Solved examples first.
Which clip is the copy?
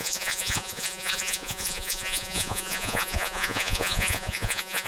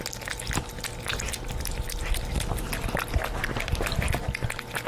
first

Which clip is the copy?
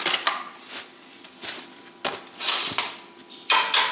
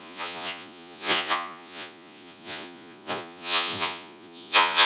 second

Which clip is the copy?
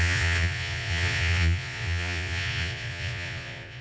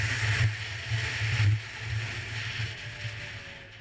first